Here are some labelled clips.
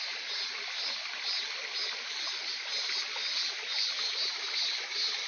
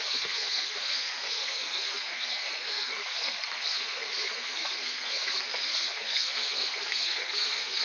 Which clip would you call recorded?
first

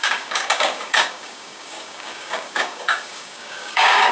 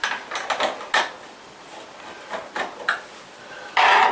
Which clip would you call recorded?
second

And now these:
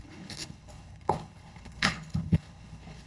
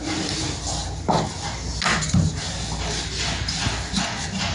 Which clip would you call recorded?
second